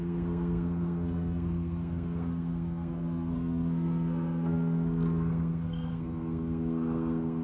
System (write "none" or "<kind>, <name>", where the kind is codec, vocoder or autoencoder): codec, SNAC